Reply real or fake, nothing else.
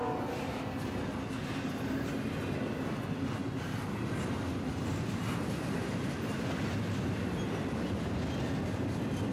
real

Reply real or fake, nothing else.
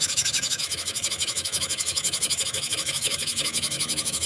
fake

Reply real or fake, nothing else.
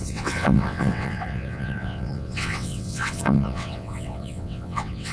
fake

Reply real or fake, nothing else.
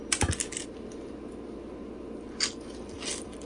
real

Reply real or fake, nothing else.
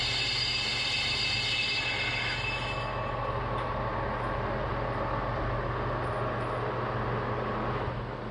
real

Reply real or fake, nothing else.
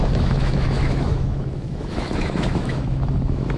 fake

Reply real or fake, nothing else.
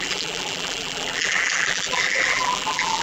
fake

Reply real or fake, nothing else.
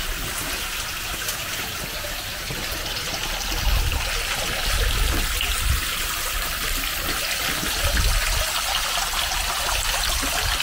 real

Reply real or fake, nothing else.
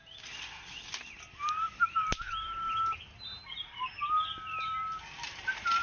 real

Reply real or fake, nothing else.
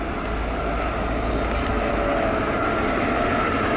real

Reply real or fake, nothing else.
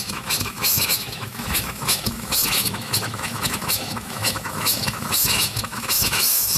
fake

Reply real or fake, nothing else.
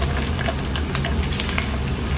real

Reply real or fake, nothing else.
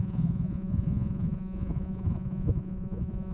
fake